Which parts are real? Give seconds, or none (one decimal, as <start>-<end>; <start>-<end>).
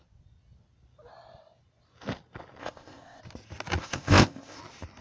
0.0-2.6; 3.2-3.8; 4.6-5.0